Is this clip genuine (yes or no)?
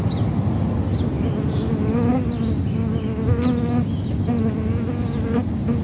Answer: yes